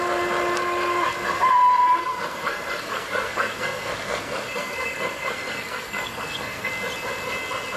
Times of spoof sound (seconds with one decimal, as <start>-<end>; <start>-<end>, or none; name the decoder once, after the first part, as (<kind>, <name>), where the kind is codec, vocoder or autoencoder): 2.0-6.7 (codec, SNAC)